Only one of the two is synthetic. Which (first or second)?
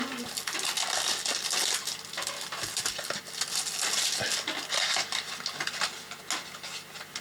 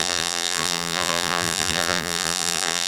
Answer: second